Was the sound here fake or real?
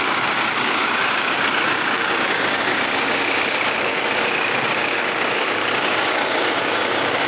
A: fake